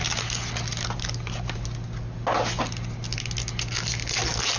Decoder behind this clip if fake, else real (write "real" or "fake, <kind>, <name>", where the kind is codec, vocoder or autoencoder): real